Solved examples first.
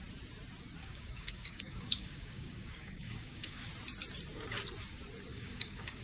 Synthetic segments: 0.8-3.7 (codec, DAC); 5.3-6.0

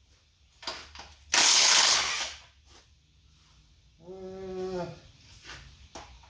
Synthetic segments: 1.4-2.1 (codec, HILCodec)

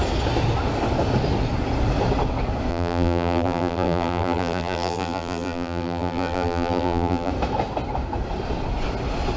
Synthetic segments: 2.7-7.3 (vocoder, BigVGAN v2)

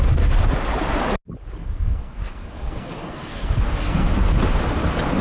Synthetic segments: 1.6-4.1 (codec, SNAC)

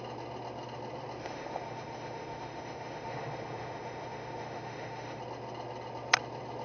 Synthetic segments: 1.2-5.2 (autoencoder, DAC-VAE)